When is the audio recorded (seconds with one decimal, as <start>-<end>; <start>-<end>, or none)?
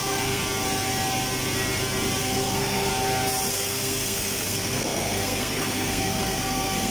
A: 0.4-2.2; 2.9-3.5